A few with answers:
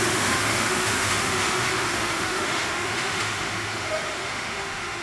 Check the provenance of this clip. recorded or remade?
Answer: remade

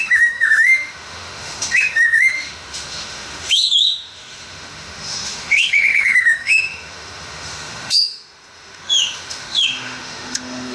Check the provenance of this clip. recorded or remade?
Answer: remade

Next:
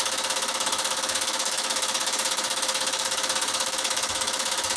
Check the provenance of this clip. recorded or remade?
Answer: remade